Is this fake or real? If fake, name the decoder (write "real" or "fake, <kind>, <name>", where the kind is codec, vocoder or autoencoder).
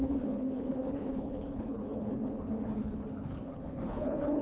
fake, codec, HILCodec